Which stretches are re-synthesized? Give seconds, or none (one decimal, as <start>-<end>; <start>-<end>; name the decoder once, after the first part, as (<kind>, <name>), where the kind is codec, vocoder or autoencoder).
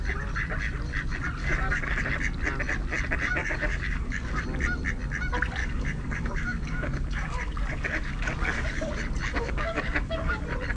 1.4-2.0 (codec, DAC); 3.4-4.4; 5.6-8.9; 9.3-10.4